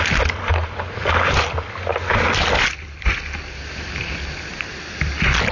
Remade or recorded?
recorded